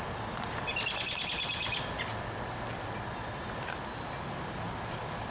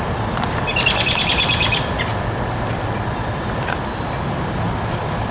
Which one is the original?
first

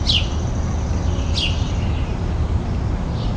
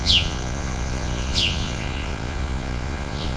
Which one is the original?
first